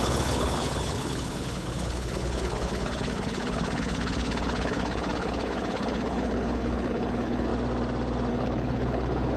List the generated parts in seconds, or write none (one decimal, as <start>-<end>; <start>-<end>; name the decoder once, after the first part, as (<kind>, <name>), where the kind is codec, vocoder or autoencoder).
0.0-7.5 (codec, HILCodec); 8.3-9.4